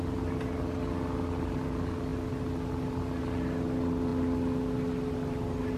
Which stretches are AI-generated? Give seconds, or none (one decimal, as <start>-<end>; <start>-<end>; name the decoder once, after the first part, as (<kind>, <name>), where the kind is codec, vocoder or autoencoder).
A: none